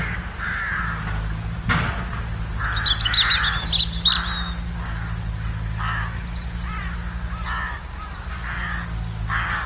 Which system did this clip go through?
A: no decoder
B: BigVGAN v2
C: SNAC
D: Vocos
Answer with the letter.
A